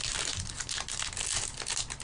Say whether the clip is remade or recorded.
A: recorded